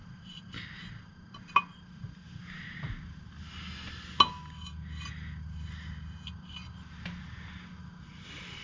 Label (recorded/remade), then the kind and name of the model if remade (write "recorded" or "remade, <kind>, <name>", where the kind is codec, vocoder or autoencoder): recorded